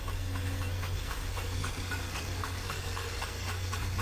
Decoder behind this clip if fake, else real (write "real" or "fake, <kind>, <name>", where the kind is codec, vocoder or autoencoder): fake, codec, SNAC